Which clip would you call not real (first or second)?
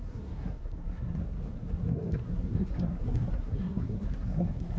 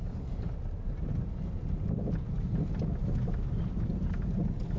first